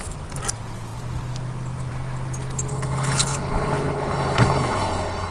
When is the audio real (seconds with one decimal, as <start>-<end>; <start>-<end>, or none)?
0.0-2.7